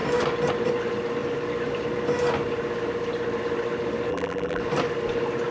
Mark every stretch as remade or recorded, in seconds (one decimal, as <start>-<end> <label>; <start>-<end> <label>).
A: 0.0-4.1 recorded; 4.1-4.6 remade; 4.6-5.5 recorded